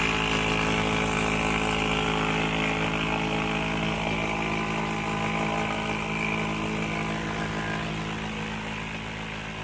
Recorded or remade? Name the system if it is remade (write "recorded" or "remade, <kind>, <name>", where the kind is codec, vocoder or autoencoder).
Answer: recorded